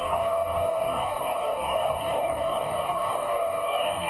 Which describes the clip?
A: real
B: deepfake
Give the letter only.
B